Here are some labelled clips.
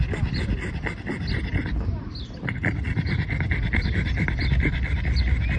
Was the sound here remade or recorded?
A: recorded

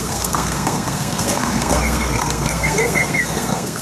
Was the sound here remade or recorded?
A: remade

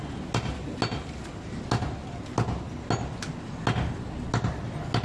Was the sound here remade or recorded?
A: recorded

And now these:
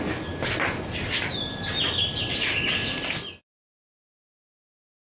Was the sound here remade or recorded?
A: recorded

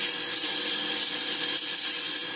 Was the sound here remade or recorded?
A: recorded